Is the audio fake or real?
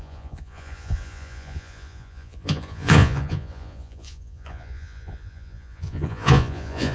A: fake